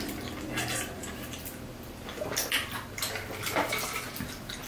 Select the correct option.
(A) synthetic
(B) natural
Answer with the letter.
A